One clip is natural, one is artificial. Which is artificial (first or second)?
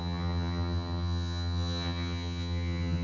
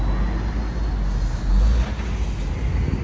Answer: first